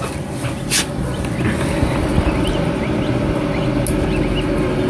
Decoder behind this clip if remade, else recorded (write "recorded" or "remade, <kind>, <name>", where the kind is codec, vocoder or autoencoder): recorded